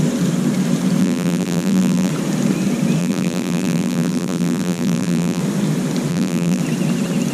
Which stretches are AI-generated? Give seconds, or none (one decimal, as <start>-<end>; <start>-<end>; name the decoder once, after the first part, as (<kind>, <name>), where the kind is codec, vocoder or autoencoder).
1.0-2.1 (vocoder, BigVGAN v2); 3.0-5.4; 6.1-6.6